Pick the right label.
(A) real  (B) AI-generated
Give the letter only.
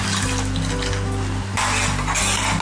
A